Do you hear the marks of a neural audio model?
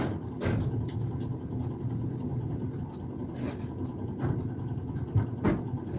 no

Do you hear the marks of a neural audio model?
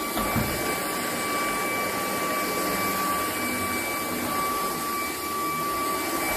no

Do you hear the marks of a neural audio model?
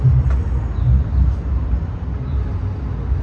no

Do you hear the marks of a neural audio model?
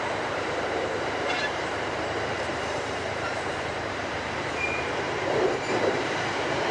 yes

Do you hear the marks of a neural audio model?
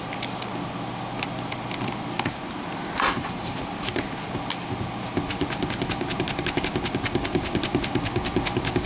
no